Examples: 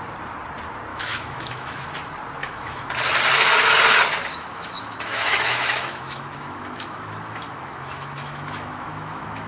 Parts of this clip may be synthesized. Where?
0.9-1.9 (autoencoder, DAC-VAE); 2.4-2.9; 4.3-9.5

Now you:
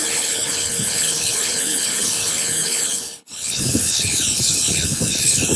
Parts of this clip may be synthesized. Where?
0.0-5.6 (codec, HILCodec)